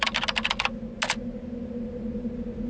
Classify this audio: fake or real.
real